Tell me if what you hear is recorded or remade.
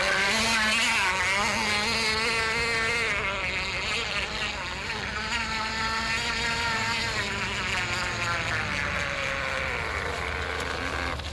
recorded